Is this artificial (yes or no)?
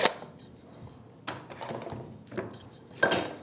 no